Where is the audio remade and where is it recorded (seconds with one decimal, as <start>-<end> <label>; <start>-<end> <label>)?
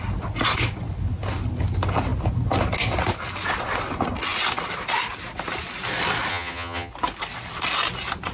0.0-6.3 recorded; 6.3-6.9 remade; 6.9-8.3 recorded